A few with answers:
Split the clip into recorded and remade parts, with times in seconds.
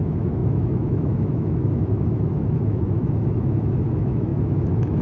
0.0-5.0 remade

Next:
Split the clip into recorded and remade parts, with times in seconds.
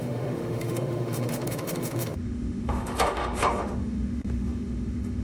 0.0-5.2 remade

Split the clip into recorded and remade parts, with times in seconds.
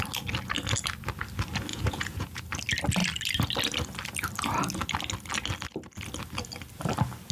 0.0-1.7 recorded; 1.7-2.4 remade; 2.4-7.3 recorded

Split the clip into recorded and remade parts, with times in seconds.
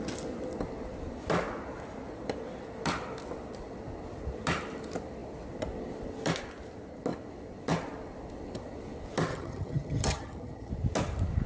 0.0-9.3 recorded; 9.3-10.7 remade; 10.7-11.5 recorded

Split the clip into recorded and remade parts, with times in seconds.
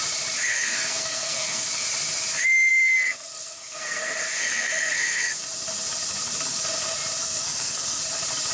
0.0-0.5 recorded; 0.5-1.7 remade; 1.7-2.7 recorded; 2.7-5.4 remade; 5.4-7.2 recorded; 7.2-8.0 remade; 8.0-8.5 recorded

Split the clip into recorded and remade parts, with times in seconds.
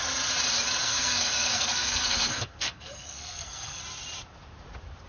0.0-0.8 recorded; 0.8-3.8 remade; 3.8-5.1 recorded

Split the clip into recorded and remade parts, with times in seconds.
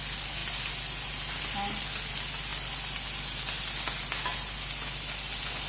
0.0-5.7 recorded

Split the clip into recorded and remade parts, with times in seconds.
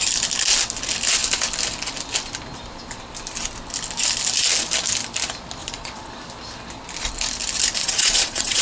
0.0-5.6 recorded; 5.6-6.2 remade; 6.2-7.8 recorded; 7.8-8.6 remade